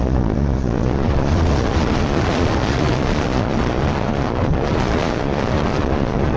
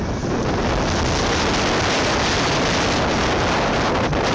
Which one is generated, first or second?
first